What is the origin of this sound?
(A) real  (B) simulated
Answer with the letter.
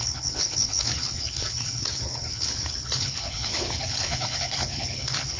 B